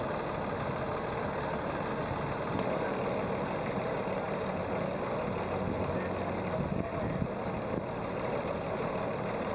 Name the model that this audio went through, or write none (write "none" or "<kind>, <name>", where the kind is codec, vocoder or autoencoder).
none